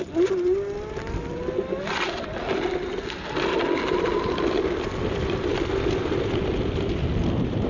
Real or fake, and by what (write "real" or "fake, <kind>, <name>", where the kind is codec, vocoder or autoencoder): real